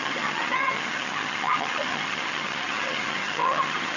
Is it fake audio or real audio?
fake